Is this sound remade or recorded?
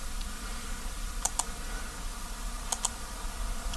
recorded